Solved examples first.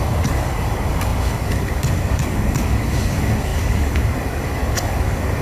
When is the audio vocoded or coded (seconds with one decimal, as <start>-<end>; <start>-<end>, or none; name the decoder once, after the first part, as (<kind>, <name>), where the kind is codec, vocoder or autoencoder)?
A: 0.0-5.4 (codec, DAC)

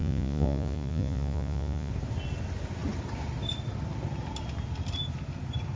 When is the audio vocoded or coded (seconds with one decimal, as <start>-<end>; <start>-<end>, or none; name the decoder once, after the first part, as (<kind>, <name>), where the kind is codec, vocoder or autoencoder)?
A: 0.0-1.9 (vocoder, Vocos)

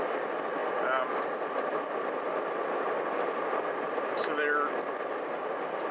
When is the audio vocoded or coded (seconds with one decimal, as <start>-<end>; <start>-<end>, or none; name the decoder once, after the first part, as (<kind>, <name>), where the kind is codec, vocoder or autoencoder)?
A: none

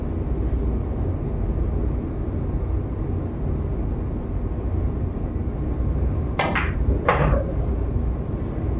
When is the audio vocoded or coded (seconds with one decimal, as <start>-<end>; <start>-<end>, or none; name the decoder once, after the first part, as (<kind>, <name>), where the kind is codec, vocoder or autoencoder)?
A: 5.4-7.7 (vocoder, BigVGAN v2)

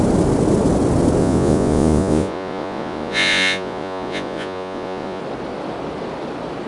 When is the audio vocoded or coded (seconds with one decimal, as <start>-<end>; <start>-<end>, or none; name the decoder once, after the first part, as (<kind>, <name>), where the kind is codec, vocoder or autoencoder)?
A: 1.2-5.2 (vocoder, Vocos)

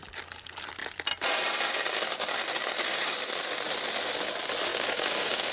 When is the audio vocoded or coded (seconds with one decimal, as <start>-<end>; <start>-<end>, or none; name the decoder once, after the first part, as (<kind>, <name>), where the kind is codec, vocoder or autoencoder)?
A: 4.7-5.5 (codec, DAC)

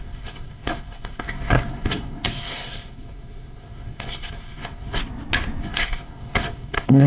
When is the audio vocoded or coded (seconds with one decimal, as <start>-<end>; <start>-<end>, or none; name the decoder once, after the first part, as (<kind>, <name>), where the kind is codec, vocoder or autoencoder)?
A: 0.0-5.0 (codec, SNAC); 5.6-7.1

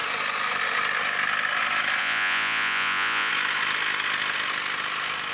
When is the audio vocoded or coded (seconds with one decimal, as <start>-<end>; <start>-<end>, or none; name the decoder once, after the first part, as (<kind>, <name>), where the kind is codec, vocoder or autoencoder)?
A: 2.0-3.3 (vocoder, Vocos)